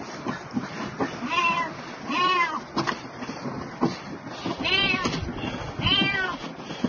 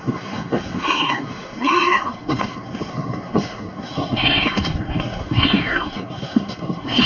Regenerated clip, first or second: second